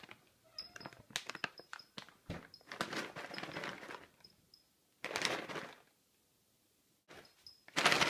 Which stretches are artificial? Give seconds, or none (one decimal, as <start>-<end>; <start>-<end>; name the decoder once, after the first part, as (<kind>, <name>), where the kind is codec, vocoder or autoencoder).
none